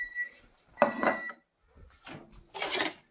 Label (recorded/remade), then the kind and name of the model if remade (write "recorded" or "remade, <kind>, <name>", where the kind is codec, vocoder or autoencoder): recorded